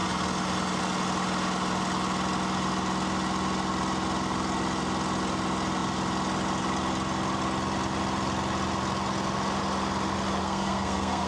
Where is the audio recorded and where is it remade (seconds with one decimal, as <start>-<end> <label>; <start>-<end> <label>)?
0.0-10.4 recorded; 10.4-11.3 remade